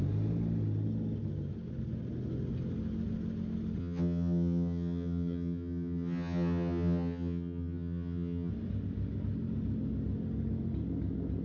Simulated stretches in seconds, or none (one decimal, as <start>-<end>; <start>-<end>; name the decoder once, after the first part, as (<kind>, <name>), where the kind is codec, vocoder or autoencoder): 3.8-8.5 (vocoder, HiFi-GAN)